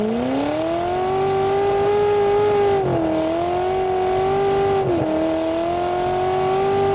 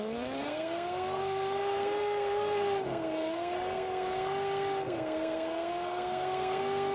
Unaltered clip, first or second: first